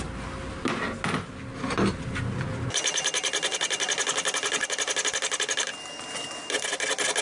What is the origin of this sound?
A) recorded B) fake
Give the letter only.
A